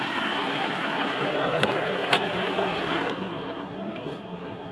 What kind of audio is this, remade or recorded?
remade